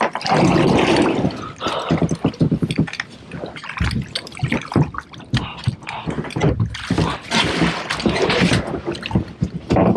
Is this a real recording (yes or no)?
yes